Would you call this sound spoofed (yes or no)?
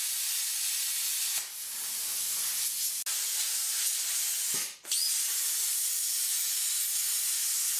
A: no